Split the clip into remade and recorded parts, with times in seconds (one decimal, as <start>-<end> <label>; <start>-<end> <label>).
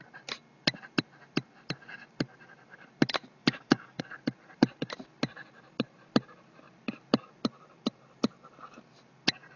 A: 0.0-3.4 recorded; 3.4-4.0 remade; 4.0-9.6 recorded